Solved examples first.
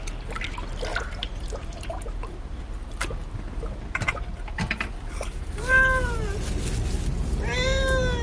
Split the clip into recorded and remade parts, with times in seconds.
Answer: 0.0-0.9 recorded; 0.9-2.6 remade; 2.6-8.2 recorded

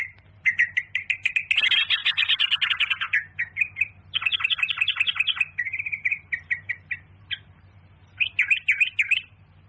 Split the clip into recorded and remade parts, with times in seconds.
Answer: 0.0-6.0 recorded; 6.0-6.7 remade; 6.7-9.7 recorded

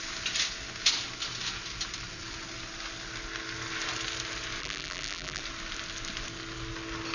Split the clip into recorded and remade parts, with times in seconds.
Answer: 0.0-4.6 recorded; 4.6-5.4 remade; 5.4-7.1 recorded